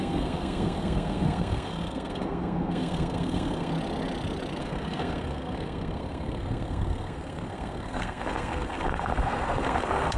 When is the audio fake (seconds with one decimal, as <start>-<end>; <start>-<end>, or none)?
0.0-3.7; 4.6-10.2